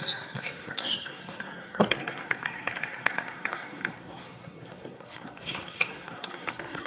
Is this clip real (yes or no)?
no